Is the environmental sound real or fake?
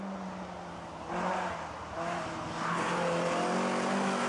real